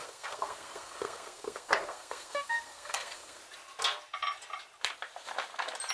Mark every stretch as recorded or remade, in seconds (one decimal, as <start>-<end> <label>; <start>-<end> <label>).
0.0-3.4 remade; 3.4-5.9 recorded